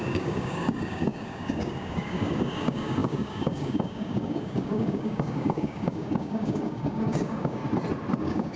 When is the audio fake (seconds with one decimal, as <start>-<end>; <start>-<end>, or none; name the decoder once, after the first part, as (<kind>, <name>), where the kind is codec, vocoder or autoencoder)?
0.0-7.6 (codec, DAC); 8.2-8.6